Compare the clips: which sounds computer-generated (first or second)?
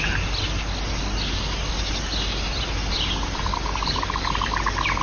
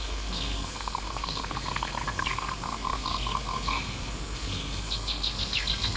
second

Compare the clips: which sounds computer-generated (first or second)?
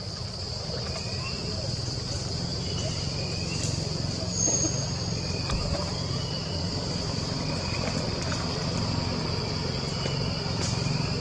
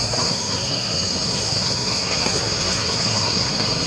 second